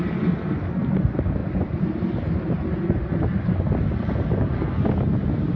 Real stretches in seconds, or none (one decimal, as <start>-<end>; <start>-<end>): 0.0-5.6